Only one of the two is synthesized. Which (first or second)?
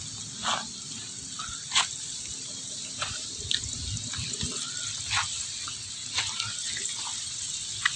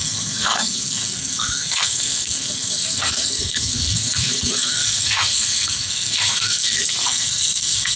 second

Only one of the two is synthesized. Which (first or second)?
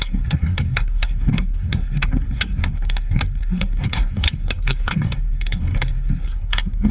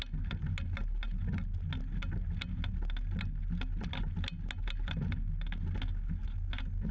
first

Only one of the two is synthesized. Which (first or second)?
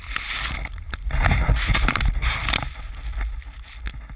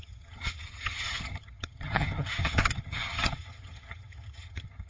second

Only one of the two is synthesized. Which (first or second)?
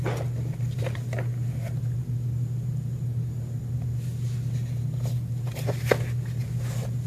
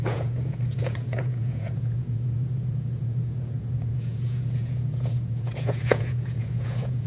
second